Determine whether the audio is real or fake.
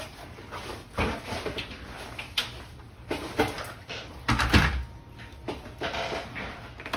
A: real